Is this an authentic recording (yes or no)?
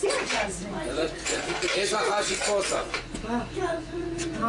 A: no